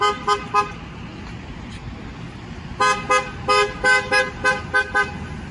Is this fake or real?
real